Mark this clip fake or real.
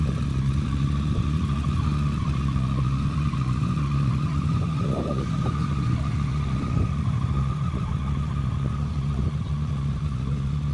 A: fake